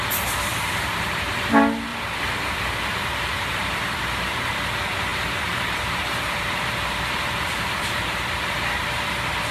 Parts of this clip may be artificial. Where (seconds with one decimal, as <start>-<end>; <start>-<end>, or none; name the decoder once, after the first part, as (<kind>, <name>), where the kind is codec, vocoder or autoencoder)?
0.5-1.5 (vocoder, BigVGAN v2); 1.9-3.8; 5.1-8.2